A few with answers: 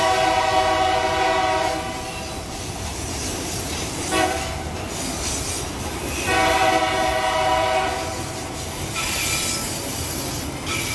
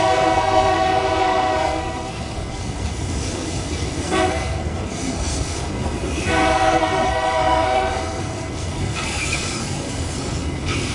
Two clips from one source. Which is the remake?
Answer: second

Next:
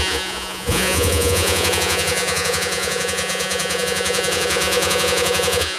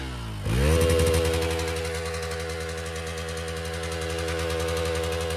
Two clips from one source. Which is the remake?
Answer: first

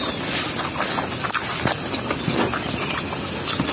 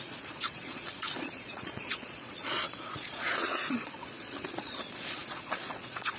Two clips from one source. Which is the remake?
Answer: second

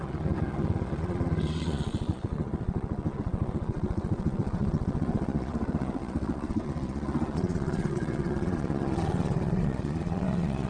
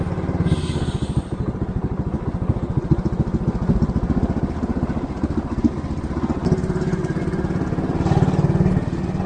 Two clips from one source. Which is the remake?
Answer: first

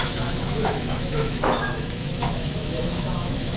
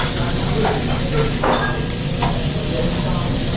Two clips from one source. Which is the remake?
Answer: first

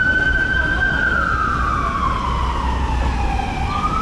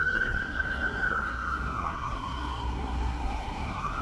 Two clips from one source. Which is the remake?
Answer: second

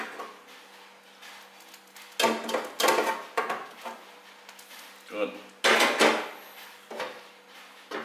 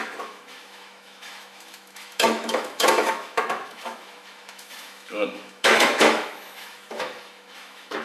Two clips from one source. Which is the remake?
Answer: second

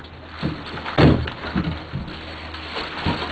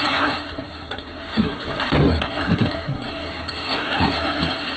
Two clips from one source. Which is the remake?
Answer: second